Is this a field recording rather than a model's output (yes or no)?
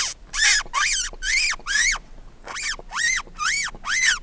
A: yes